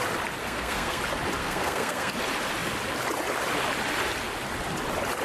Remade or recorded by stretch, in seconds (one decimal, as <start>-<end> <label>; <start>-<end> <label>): 0.0-0.4 recorded; 0.4-1.0 remade; 1.0-1.4 recorded; 1.4-2.1 remade; 2.1-5.2 recorded